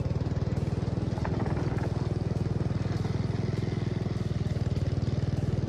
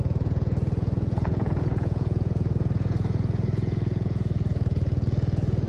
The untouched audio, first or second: first